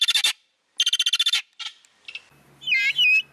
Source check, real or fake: real